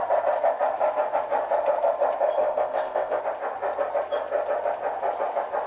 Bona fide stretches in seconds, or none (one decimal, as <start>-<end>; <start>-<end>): 0.0-2.4; 3.2-5.7